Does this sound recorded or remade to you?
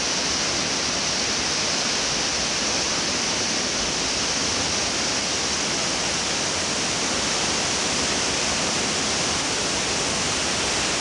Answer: recorded